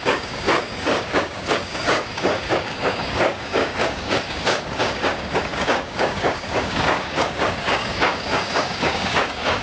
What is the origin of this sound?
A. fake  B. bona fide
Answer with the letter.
A